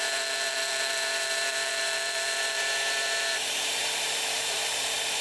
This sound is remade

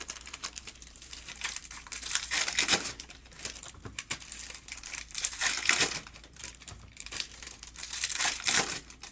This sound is remade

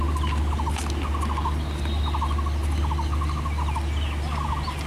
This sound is recorded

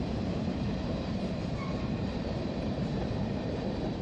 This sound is remade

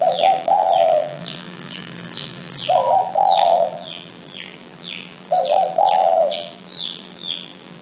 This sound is remade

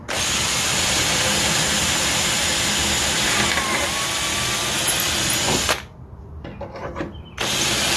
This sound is recorded